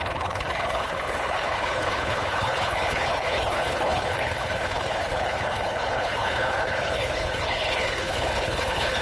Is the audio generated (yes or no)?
yes